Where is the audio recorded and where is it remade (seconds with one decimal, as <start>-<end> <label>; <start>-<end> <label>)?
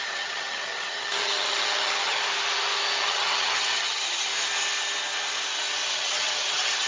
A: 0.0-2.2 remade; 2.2-3.0 recorded; 3.0-4.3 remade; 4.3-5.9 recorded; 5.9-6.9 remade